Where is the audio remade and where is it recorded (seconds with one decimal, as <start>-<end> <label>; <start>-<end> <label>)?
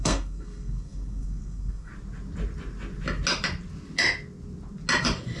0.0-1.9 remade; 1.9-5.4 recorded